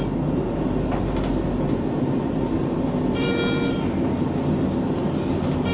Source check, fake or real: real